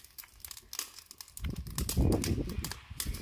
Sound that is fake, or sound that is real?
real